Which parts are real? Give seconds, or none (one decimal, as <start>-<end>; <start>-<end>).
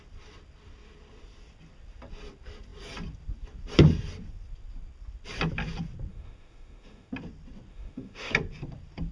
0.0-6.1; 7.1-7.7; 8.3-9.1